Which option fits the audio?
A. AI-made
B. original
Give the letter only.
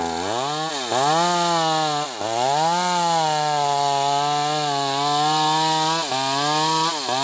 B